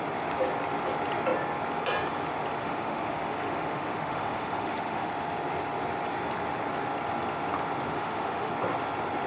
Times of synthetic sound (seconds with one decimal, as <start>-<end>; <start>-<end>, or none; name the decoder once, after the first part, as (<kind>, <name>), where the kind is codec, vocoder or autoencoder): 2.6-5.1 (autoencoder, DAC-VAE); 7.9-8.5